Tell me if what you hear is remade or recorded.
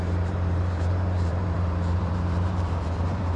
remade